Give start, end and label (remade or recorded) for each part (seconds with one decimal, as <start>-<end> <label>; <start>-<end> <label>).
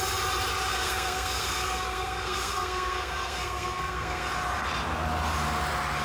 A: 0.0-0.7 recorded; 0.7-4.3 remade; 4.3-6.0 recorded